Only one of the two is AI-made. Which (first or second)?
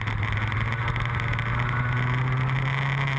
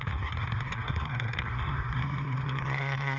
second